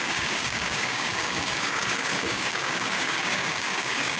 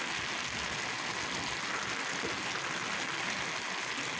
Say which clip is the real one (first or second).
second